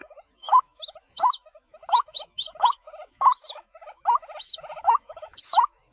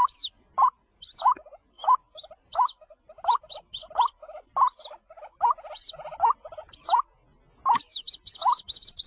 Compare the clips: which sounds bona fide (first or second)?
second